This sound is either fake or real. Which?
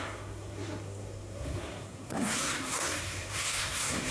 fake